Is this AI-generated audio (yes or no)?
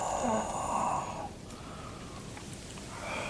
no